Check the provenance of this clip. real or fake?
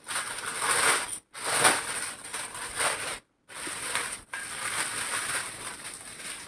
real